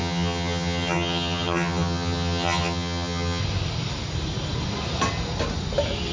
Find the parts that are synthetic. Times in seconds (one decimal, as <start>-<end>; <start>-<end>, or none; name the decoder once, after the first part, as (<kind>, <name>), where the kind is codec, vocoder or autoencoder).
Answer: 0.0-3.4 (vocoder, HiFi-GAN)